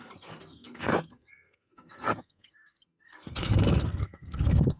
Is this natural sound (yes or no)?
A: no